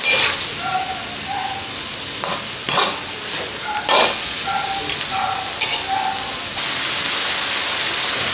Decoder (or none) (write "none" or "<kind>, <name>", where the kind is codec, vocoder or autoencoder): none